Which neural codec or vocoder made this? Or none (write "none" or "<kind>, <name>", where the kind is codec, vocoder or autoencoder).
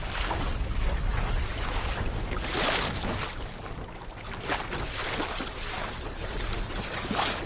none